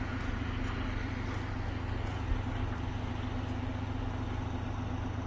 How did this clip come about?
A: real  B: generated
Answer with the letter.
A